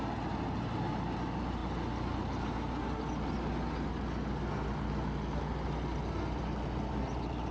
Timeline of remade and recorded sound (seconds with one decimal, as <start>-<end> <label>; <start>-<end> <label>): 0.0-7.5 recorded